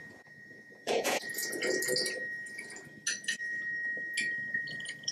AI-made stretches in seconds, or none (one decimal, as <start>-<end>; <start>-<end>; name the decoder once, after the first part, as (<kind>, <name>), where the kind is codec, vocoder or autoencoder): 0.0-1.4 (vocoder, Vocos); 4.5-5.1